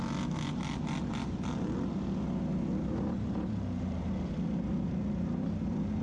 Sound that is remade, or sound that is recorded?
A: recorded